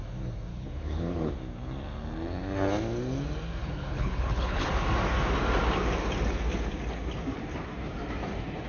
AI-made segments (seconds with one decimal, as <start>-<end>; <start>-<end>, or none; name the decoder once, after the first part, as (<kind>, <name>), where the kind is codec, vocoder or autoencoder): 0.5-1.3 (codec, HILCodec); 3.6-4.7